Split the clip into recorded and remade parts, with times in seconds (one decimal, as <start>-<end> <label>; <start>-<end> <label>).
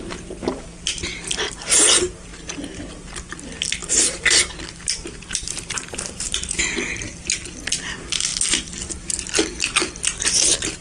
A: 0.0-2.3 remade; 2.3-2.9 recorded; 2.9-8.3 remade; 8.3-9.0 recorded; 9.0-10.8 remade